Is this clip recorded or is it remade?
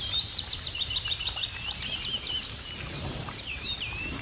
remade